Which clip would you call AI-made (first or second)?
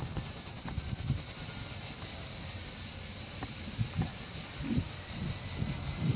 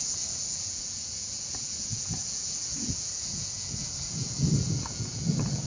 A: second